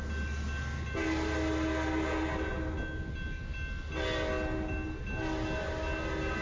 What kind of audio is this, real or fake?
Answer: real